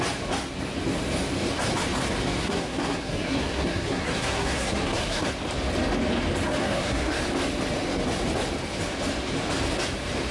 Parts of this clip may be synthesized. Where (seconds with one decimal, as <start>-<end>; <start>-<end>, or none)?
2.4-5.3; 6.6-7.2